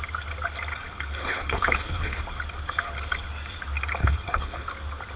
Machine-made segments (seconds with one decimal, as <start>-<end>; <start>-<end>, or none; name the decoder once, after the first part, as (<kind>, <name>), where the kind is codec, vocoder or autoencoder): 0.7-2.2 (codec, HILCodec); 4.0-4.7

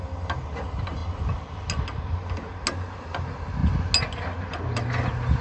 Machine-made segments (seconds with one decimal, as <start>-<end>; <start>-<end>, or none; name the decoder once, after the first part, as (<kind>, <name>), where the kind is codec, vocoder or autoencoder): none

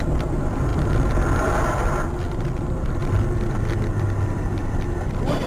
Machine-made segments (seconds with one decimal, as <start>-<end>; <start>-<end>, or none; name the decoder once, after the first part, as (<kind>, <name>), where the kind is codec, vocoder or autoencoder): none

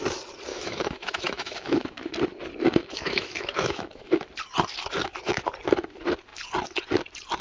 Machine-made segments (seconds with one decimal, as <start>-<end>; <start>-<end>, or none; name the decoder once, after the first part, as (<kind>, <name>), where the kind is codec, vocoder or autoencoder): 0.5-2.1 (autoencoder, DAC-VAE); 2.8-4.2

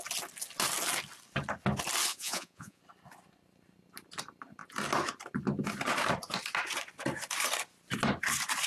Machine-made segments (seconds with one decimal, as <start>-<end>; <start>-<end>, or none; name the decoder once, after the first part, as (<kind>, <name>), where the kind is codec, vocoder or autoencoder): 2.1-2.8 (vocoder, Vocos)

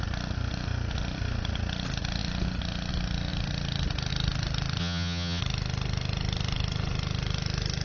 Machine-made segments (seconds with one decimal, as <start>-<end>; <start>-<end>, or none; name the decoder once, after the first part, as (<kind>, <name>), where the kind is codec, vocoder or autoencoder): 4.8-5.4 (vocoder, HiFi-GAN)

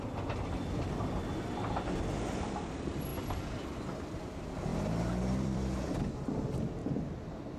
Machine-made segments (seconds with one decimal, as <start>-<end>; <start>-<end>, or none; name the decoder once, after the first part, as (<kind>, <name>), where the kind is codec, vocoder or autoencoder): 4.7-5.9 (vocoder, BigVGAN v2)